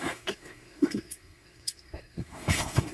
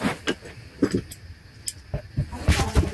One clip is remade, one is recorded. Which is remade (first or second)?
first